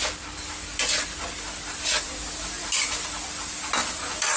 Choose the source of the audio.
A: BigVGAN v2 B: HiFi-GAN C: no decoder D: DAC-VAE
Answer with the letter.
C